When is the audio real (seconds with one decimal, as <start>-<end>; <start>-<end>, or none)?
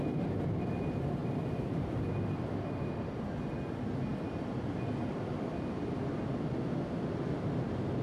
0.0-8.0